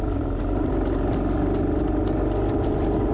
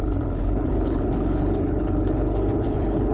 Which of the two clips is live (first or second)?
first